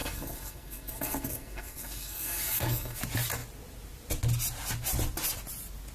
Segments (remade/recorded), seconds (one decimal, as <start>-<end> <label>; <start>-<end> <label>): 0.0-3.0 remade; 3.0-5.9 recorded